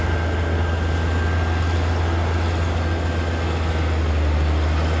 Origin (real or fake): real